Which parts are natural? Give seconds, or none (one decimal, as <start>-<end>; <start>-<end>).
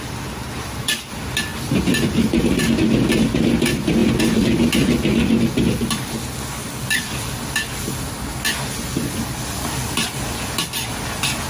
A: 0.0-1.5; 2.6-6.6; 8.1-11.5